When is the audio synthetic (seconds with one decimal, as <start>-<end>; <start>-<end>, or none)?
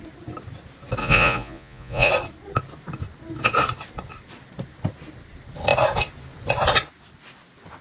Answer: 1.0-2.1